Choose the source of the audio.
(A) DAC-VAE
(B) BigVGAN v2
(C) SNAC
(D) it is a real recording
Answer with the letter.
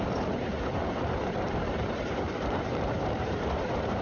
B